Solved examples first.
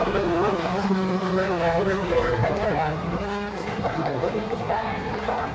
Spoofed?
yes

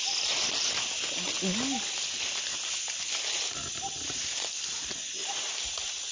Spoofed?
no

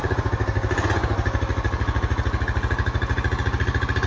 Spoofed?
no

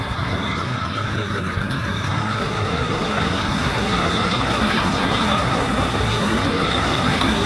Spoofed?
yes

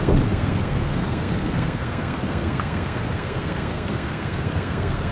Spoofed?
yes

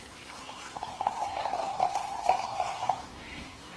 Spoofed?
yes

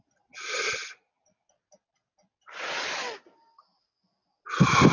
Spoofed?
no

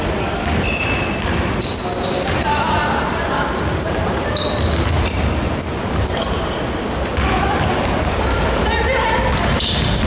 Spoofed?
no